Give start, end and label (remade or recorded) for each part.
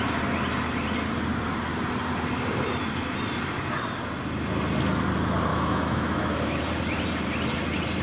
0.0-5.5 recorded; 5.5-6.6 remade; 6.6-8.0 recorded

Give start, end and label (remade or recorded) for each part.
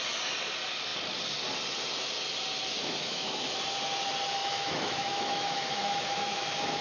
0.0-2.8 recorded; 2.8-3.6 remade; 3.6-4.4 recorded; 4.4-6.8 remade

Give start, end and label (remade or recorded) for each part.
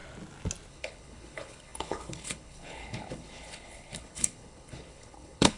0.0-0.7 recorded; 0.7-5.6 remade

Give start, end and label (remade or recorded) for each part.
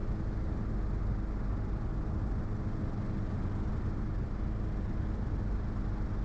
0.0-6.2 recorded